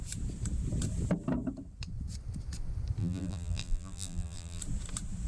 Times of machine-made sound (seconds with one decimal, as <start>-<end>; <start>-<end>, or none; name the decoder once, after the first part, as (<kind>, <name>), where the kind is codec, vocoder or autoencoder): 3.0-4.6 (vocoder, BigVGAN v2)